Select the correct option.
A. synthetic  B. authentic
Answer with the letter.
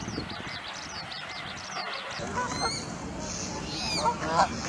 B